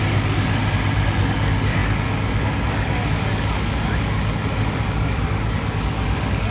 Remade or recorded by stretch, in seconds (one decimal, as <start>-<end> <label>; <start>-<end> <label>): 0.0-0.6 remade; 0.6-1.2 recorded; 1.2-6.5 remade